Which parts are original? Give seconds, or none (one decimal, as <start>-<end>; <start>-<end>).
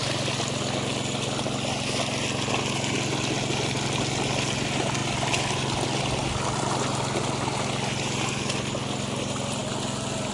0.0-10.3